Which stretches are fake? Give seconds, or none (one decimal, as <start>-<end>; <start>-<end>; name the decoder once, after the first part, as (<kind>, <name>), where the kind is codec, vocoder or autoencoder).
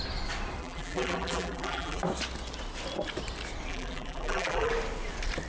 0.6-2.0 (vocoder, BigVGAN v2); 3.7-4.7